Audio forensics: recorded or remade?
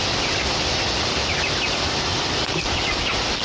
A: recorded